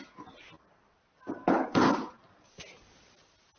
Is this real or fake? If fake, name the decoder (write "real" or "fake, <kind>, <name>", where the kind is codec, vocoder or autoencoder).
real